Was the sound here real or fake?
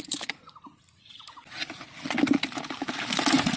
real